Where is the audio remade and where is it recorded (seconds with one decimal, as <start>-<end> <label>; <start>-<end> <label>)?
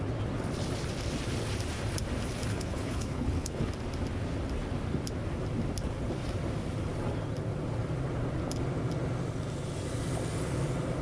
0.0-2.5 recorded; 2.5-3.7 remade; 3.7-11.0 recorded